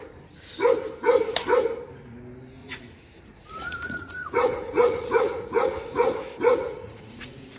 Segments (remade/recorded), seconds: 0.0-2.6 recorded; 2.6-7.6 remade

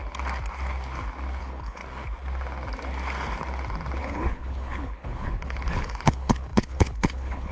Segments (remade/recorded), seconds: 0.0-1.4 recorded; 1.4-1.8 remade; 1.8-4.0 recorded; 4.0-7.5 remade

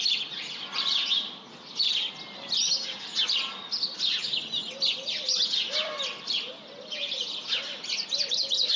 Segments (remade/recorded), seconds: 0.0-8.8 recorded

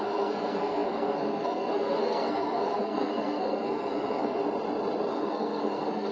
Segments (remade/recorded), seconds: 0.0-4.4 remade; 4.4-5.1 recorded; 5.1-6.1 remade

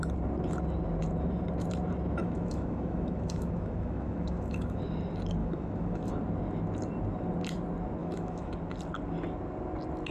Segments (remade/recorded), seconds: 0.0-2.2 recorded; 2.2-4.8 remade; 4.8-5.4 recorded; 5.4-6.1 remade; 6.1-8.0 recorded; 8.0-8.5 remade; 8.5-10.1 recorded

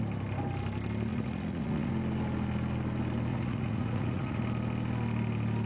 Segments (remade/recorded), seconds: 0.0-1.1 recorded; 1.1-1.9 remade; 1.9-3.3 recorded; 3.3-4.4 remade; 4.4-5.7 recorded

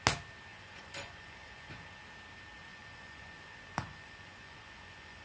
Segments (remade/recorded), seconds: 0.0-0.5 recorded; 0.5-2.0 remade; 2.0-2.7 recorded; 2.7-5.2 remade

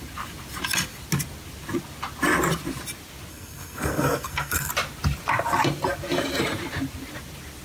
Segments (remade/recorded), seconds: 0.0-3.3 recorded; 3.3-4.7 remade; 4.7-7.6 recorded